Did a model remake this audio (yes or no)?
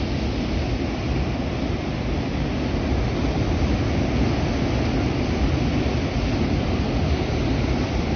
no